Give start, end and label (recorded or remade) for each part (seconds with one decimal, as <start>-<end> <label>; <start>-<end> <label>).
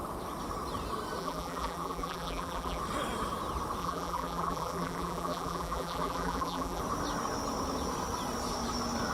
0.0-1.2 recorded; 1.2-2.8 remade; 2.8-3.8 recorded; 3.8-6.8 remade; 6.8-9.1 recorded